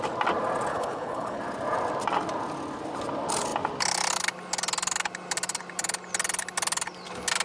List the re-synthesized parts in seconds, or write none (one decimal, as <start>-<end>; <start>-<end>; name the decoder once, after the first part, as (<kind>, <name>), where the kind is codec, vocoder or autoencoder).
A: 0.7-1.4 (codec, HILCodec)